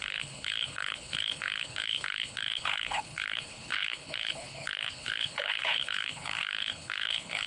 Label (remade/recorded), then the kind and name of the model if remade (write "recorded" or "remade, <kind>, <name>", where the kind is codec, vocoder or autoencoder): remade, codec, HILCodec